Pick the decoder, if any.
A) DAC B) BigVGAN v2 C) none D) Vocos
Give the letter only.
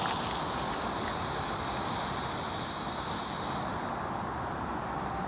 C